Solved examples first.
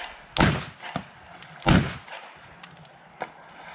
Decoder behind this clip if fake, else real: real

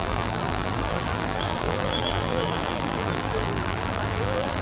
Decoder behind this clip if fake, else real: fake, vocoder, BigVGAN v2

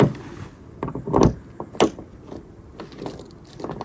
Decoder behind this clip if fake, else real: real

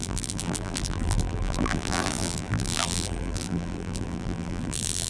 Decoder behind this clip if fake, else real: fake, vocoder, BigVGAN v2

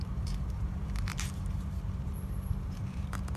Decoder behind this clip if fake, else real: fake, vocoder, BigVGAN v2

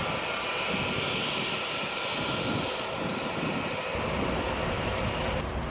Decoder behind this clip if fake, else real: real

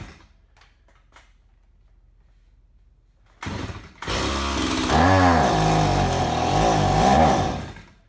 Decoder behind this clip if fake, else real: real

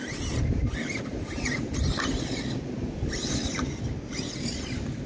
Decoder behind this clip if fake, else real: real